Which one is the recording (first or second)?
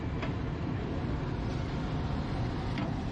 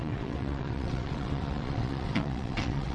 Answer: first